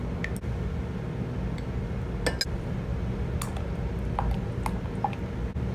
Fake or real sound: real